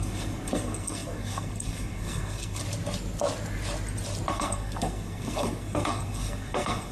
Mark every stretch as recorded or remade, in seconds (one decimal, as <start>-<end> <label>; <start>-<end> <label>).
0.0-2.6 remade; 2.6-4.3 recorded; 4.3-6.9 remade